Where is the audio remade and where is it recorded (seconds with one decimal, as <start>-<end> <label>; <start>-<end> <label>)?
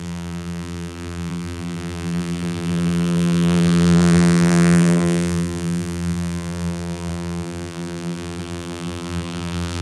0.0-9.8 remade